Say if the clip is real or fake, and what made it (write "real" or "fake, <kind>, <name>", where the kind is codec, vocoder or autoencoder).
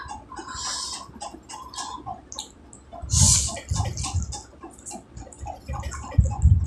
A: real